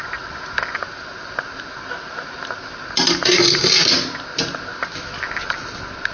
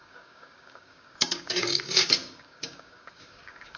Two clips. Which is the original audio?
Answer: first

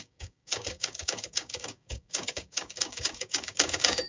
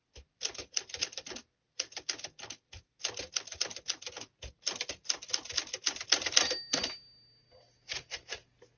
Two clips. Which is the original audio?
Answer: second